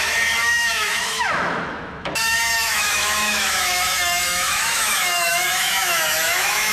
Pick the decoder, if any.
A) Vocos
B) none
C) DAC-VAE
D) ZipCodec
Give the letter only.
C